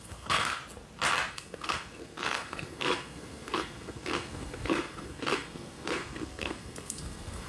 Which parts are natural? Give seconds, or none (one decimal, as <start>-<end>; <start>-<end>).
0.6-1.3